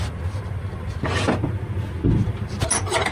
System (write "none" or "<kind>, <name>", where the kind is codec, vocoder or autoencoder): none